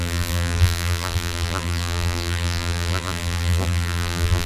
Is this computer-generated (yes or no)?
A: yes